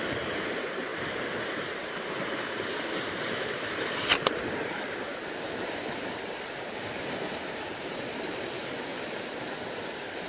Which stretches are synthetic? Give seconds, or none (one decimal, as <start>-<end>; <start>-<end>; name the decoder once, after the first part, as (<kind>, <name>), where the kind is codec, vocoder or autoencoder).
0.0-0.9 (vocoder, BigVGAN v2); 1.5-8.9; 9.4-10.3